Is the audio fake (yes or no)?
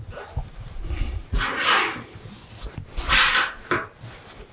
no